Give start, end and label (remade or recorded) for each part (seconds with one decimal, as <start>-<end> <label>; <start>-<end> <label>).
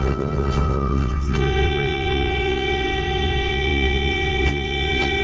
0.0-5.2 remade